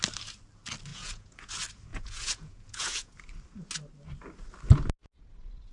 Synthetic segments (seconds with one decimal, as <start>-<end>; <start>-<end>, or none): 0.9-1.5; 1.9-3.1